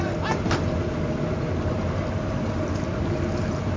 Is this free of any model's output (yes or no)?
yes